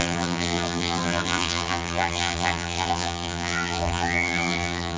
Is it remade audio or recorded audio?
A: remade